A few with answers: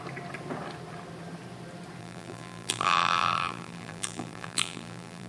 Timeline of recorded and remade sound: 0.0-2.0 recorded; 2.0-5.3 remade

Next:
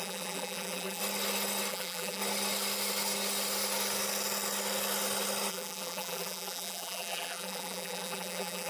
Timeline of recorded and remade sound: 0.0-1.0 remade; 1.0-1.7 recorded; 1.7-2.2 remade; 2.2-5.5 recorded; 5.5-8.7 remade

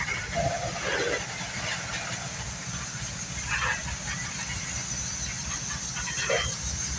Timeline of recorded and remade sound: 0.0-7.0 recorded

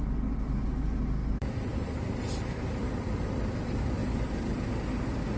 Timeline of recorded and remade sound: 0.0-1.2 recorded; 1.2-2.8 remade; 2.8-4.0 recorded; 4.0-4.6 remade; 4.6-5.4 recorded

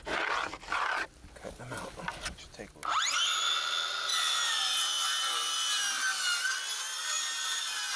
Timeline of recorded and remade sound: 0.0-4.1 recorded; 4.1-5.2 remade; 5.2-5.8 recorded; 5.8-6.6 remade; 6.6-7.0 recorded; 7.0-8.0 remade